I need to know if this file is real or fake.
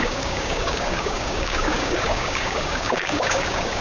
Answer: fake